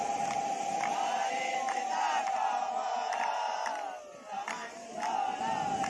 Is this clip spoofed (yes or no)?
no